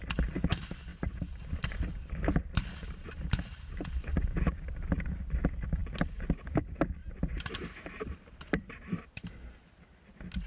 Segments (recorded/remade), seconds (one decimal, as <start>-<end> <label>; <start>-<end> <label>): 0.0-0.9 recorded; 0.9-5.2 remade; 5.2-7.0 recorded; 7.0-9.3 remade; 9.3-10.5 recorded